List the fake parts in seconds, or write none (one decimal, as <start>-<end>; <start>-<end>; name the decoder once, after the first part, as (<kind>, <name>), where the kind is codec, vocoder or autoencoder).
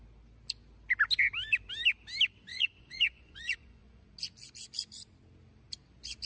2.5-4.1 (vocoder, Vocos)